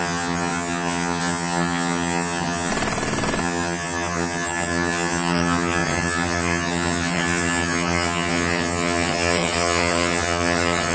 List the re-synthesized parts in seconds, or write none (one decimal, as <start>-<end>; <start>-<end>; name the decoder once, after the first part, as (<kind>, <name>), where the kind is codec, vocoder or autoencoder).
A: 0.0-2.7 (vocoder, HiFi-GAN); 3.4-10.9